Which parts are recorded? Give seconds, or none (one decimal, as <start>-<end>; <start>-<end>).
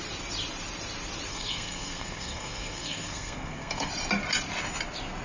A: 0.0-1.3; 3.9-5.2